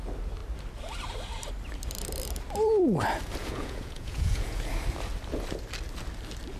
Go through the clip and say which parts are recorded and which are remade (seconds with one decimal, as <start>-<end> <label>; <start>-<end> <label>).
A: 0.0-3.4 recorded; 3.4-4.7 remade; 4.7-6.6 recorded